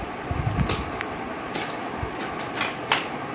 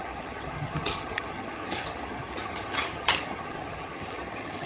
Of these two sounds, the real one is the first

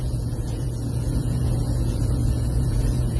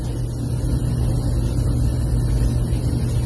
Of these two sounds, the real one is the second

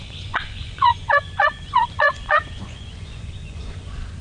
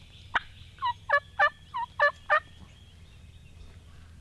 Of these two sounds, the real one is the second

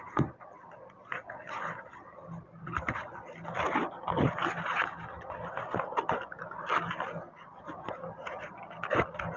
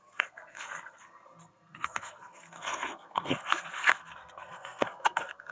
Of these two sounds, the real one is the first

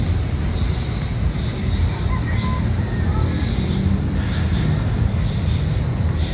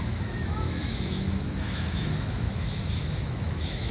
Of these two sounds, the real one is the first